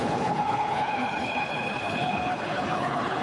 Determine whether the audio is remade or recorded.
remade